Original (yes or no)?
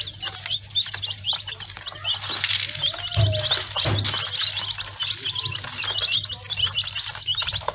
yes